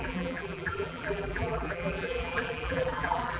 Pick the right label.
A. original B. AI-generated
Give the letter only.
B